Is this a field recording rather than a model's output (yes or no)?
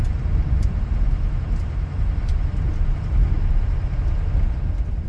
yes